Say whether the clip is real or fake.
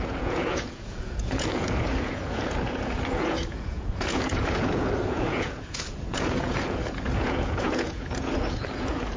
fake